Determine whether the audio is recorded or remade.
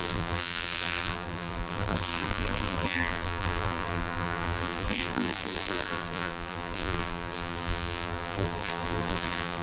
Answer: remade